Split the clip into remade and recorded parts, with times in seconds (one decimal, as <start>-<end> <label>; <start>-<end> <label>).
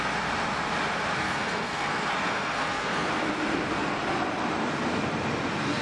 0.0-1.2 recorded; 1.2-3.1 remade; 3.1-5.8 recorded